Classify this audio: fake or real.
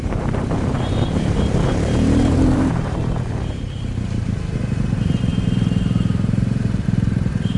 fake